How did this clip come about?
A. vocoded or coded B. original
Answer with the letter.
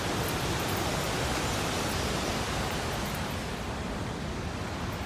B